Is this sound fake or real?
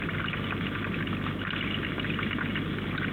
real